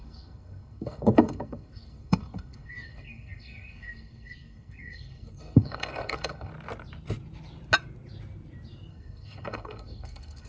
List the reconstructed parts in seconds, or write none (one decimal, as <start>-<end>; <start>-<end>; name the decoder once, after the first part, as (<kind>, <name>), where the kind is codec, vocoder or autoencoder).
0.0-6.5 (codec, SNAC); 8.9-10.5